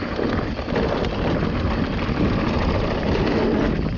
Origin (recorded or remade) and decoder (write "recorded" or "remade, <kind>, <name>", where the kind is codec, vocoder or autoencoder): recorded